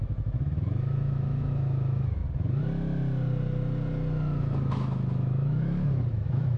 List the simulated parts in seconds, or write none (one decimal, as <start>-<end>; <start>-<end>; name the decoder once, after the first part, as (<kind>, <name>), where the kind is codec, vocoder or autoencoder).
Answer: 0.0-2.2 (autoencoder, DAC-VAE); 4.4-6.6